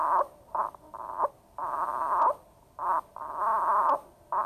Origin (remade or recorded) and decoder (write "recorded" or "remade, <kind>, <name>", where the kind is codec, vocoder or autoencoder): recorded